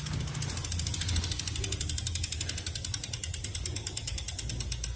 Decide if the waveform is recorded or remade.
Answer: recorded